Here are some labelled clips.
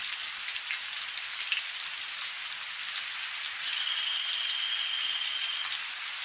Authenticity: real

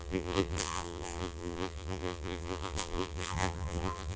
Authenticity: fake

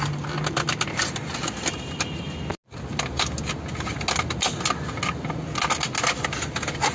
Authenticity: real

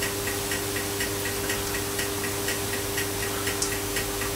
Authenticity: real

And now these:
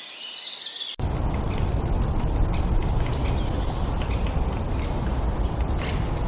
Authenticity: real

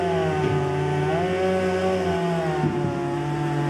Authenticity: real